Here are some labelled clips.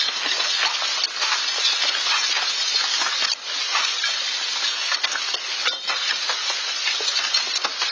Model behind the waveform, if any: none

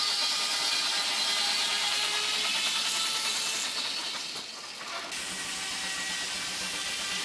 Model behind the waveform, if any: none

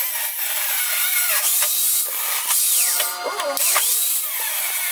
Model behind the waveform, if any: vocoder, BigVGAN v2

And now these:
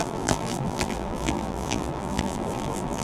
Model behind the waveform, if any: vocoder, BigVGAN v2